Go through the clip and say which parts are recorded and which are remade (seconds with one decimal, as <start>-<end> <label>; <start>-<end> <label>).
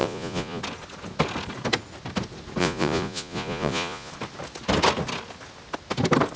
0.0-0.6 remade; 0.6-2.6 recorded; 2.6-4.1 remade; 4.1-6.4 recorded